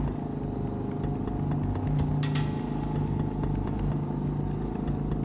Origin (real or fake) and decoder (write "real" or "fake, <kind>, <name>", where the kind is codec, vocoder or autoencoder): real